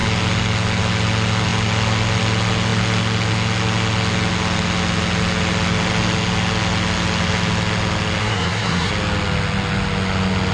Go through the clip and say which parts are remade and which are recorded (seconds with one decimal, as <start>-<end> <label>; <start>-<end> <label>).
0.0-8.2 recorded; 8.2-8.9 remade; 8.9-10.5 recorded